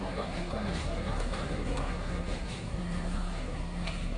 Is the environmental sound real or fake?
fake